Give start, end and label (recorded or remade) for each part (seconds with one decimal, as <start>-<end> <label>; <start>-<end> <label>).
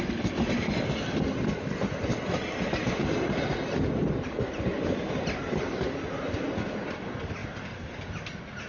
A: 0.0-8.7 recorded